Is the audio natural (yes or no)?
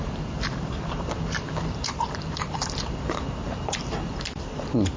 no